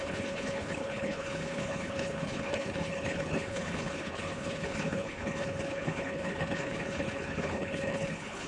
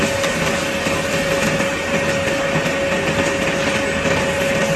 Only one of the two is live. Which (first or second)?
second